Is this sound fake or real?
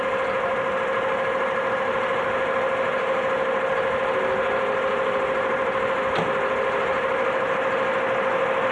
real